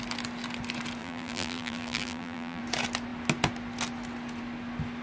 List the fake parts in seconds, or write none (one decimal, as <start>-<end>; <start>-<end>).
1.0-2.6